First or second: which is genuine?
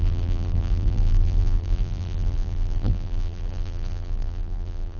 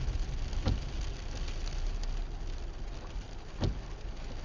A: second